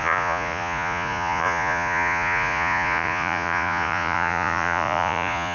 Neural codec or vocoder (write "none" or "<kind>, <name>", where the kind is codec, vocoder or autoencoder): vocoder, Vocos